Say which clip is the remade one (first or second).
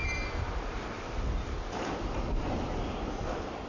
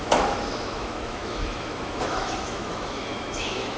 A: second